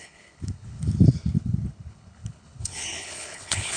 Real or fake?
fake